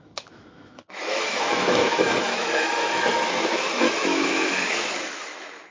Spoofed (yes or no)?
yes